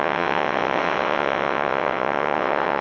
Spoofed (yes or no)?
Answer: yes